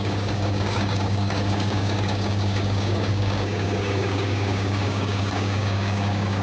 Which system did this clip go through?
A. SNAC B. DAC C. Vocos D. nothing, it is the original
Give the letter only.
B